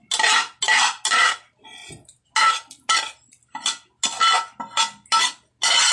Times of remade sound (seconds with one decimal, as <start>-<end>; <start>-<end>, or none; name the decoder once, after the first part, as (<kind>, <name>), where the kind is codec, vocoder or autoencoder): none